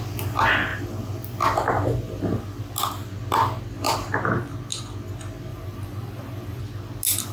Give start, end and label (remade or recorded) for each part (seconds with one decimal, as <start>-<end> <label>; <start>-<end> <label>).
0.0-5.5 recorded; 5.5-6.6 remade; 6.6-7.3 recorded